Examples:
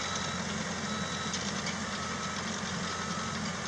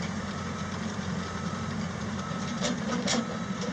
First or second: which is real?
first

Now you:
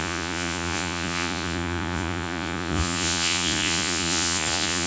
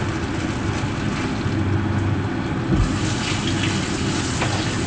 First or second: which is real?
second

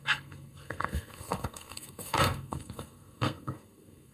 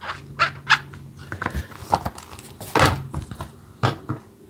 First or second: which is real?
second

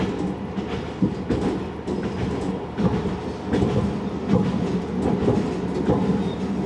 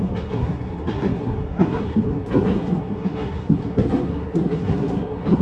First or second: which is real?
first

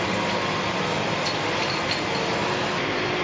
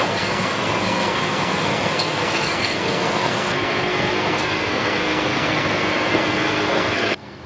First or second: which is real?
first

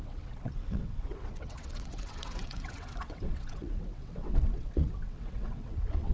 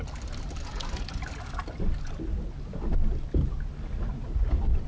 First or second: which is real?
second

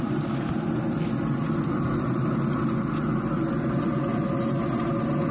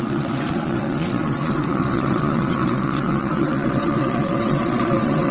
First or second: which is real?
first